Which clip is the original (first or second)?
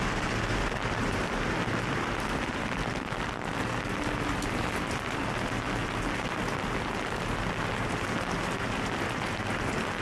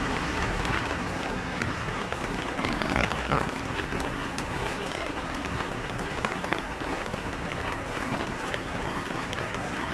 first